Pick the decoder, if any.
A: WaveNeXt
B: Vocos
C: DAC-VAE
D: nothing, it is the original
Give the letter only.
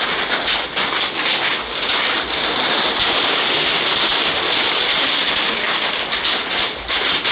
D